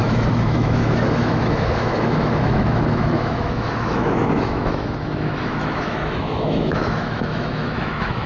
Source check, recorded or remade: remade